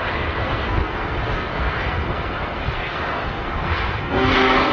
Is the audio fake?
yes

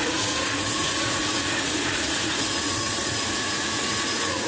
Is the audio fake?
yes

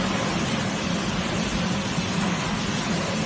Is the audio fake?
no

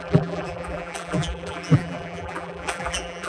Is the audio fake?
yes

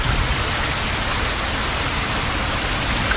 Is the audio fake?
no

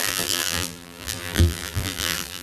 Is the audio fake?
yes